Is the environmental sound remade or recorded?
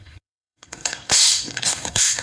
remade